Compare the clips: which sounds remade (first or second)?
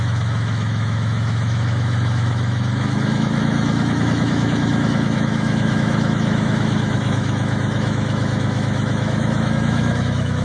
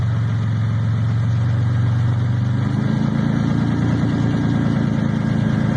first